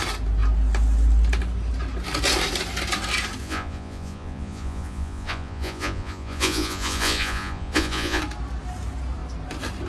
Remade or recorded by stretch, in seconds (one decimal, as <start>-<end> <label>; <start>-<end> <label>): 0.0-3.4 recorded; 3.4-8.2 remade; 8.2-9.9 recorded

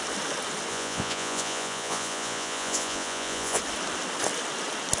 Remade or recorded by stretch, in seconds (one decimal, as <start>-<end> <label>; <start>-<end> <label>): 0.0-0.7 recorded; 0.7-3.6 remade; 3.6-5.0 recorded

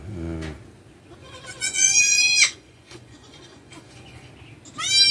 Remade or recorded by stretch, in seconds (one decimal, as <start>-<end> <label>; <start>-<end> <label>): 0.0-1.2 recorded; 1.2-4.3 remade; 4.3-5.1 recorded

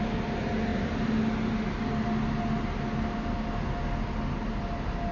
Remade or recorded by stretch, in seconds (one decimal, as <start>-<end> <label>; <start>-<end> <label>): 0.0-5.1 recorded

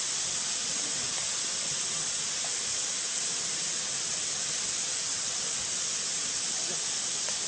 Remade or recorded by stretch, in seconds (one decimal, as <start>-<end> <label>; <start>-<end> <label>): 0.0-7.5 recorded

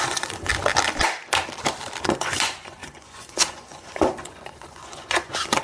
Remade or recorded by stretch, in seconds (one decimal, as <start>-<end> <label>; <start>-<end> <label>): 0.0-0.5 remade; 0.5-2.0 recorded; 2.0-5.6 remade